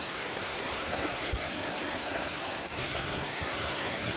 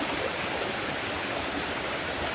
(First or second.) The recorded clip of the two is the second